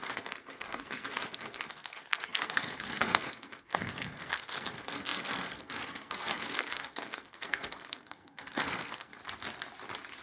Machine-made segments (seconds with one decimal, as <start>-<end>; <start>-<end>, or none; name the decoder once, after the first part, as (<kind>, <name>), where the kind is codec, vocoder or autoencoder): 0.0-9.1 (codec, SNAC)